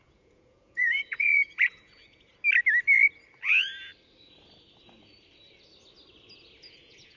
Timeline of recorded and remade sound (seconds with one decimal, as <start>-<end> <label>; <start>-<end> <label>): 0.0-2.3 remade; 2.3-6.6 recorded; 6.6-7.2 remade